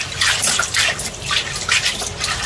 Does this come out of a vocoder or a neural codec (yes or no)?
no